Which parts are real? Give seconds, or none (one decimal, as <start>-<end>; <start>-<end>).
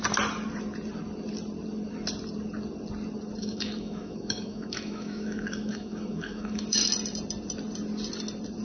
0.0-3.4; 6.9-8.6